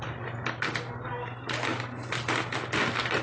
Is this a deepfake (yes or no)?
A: no